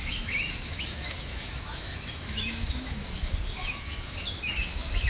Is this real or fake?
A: fake